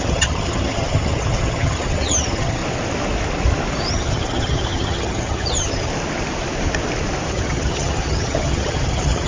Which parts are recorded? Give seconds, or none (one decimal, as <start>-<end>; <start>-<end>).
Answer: 2.6-3.9; 5.9-7.3